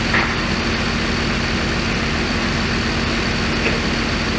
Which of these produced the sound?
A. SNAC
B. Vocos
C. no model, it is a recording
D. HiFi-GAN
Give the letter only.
C